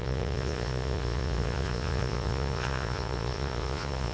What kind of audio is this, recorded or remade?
remade